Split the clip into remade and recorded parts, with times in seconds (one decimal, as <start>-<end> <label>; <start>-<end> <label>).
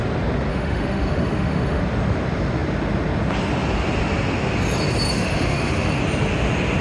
0.0-0.5 recorded; 0.5-1.8 remade; 1.8-5.1 recorded; 5.1-6.0 remade; 6.0-6.8 recorded